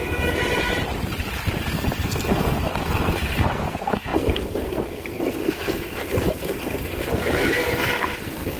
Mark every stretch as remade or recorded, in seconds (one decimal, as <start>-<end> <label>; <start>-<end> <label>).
0.0-0.4 remade; 0.4-1.7 recorded; 1.7-8.6 remade

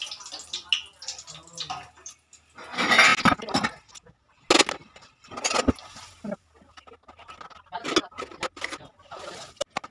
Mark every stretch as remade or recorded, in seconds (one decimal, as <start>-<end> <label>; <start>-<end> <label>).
0.0-9.9 recorded

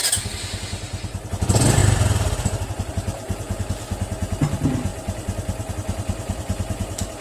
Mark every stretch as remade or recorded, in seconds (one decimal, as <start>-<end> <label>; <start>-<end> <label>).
0.0-7.2 recorded